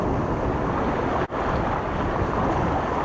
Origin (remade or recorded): recorded